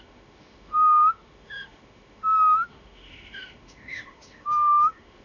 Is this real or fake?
fake